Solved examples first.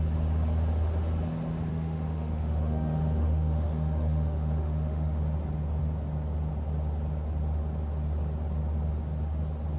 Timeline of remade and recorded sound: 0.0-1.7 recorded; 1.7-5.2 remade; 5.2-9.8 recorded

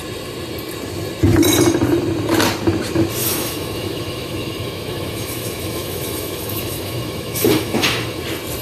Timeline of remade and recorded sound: 0.0-3.2 recorded; 3.2-8.2 remade; 8.2-8.6 recorded

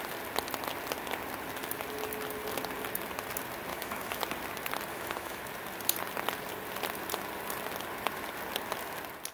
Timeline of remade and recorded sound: 0.0-3.7 recorded; 3.7-4.2 remade; 4.2-4.9 recorded; 4.9-5.4 remade; 5.4-9.3 recorded

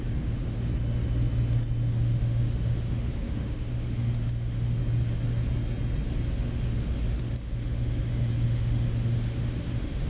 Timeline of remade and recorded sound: 0.0-0.7 remade; 0.7-1.9 recorded; 1.9-4.8 remade; 4.8-6.3 recorded; 6.3-10.1 remade

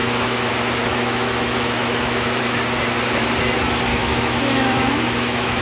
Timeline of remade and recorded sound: 0.0-0.5 remade; 0.5-0.9 recorded; 0.9-2.4 remade; 2.4-3.9 recorded; 3.9-5.6 remade

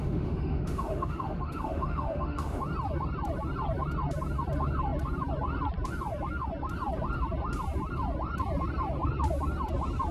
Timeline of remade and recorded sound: 0.0-2.6 remade; 2.6-10.1 recorded